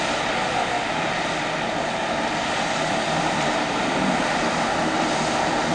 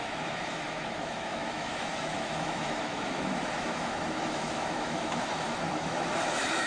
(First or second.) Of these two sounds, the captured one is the first